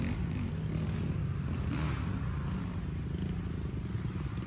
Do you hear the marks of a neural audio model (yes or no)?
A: no